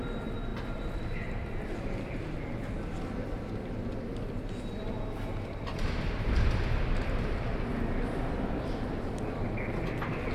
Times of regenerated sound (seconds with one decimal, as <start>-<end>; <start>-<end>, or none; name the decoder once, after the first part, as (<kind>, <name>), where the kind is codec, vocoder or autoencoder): 0.5-1.4 (vocoder, BigVGAN v2)